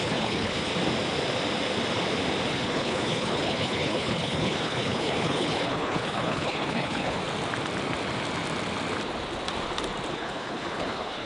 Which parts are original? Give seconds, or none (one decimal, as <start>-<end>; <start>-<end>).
0.7-2.5; 7.2-10.1